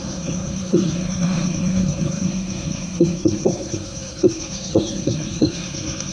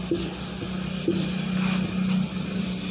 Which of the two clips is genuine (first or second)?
second